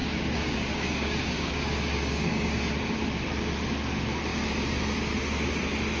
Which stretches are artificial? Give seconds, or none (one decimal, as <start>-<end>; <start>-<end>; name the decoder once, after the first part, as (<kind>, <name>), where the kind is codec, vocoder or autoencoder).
0.0-2.6 (codec, DAC)